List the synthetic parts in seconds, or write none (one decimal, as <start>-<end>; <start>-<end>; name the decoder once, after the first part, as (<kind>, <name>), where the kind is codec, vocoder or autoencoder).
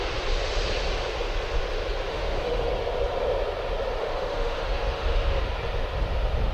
2.1-2.7 (autoencoder, DAC-VAE); 4.0-5.4